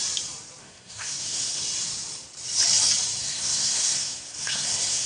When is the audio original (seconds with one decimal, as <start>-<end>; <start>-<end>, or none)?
0.0-0.6; 1.6-3.2